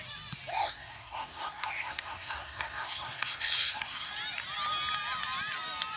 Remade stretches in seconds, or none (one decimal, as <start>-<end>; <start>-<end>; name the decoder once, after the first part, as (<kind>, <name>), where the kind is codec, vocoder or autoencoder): 0.5-4.1 (codec, SNAC)